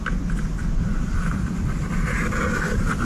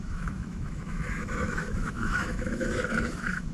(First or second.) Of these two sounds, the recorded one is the first